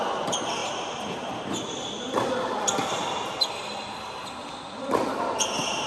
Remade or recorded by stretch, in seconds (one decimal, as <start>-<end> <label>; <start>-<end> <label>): 0.0-5.9 recorded